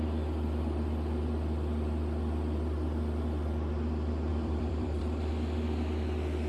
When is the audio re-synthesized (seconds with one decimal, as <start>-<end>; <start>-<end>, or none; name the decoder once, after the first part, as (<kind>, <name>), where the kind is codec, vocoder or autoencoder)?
4.3-5.3 (vocoder, BigVGAN v2)